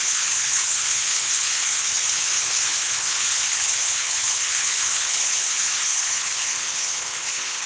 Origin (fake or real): fake